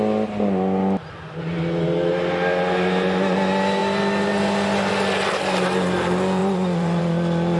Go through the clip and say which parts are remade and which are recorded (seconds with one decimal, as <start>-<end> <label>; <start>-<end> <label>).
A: 0.0-6.4 recorded; 6.4-7.0 remade; 7.0-7.6 recorded